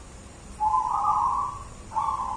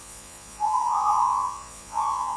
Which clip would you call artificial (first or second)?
second